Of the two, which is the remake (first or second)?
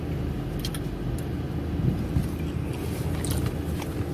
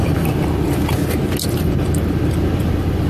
second